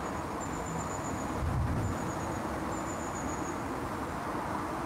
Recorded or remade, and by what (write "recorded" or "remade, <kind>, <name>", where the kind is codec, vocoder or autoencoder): recorded